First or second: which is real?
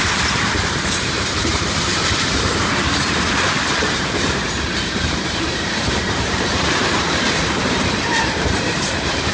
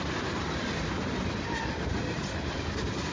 second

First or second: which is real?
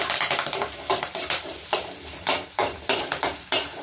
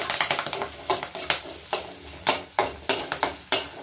second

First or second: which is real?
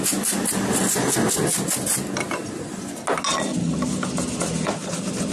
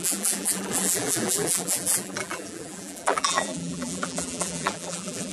first